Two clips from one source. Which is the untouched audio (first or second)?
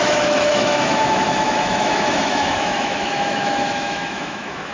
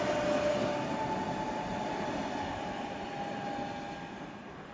second